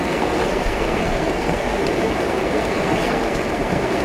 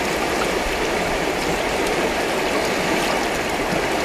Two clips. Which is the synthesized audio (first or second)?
first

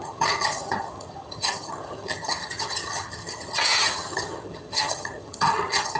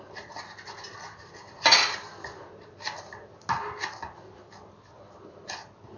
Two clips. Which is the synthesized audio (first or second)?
first